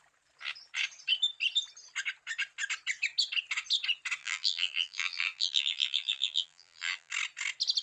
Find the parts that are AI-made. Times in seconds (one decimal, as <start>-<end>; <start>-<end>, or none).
4.2-7.1